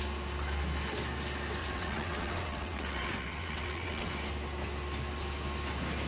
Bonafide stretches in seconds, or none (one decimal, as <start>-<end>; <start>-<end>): 0.0-1.6; 4.1-6.1